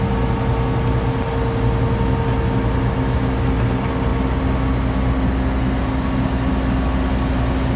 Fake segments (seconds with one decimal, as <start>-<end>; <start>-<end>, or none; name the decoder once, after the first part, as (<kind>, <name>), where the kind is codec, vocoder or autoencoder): none